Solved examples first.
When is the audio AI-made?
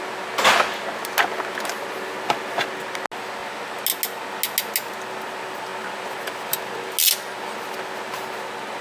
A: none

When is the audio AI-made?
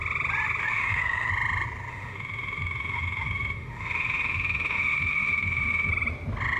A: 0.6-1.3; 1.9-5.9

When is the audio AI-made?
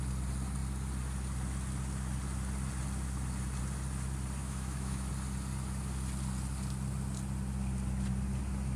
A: 4.4-5.1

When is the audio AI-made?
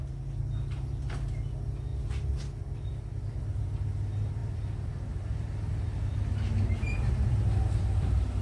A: none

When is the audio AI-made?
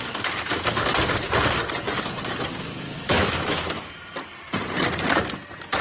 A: 2.7-3.9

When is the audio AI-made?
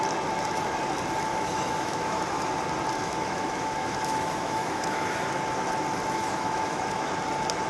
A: 1.3-2.5; 3.0-5.4; 6.2-6.8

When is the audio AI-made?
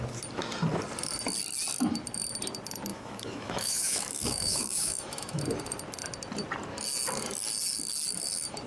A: 2.9-5.4